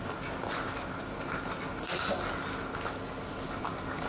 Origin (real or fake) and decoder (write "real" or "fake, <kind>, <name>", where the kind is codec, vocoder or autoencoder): real